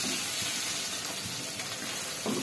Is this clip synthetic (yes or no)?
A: no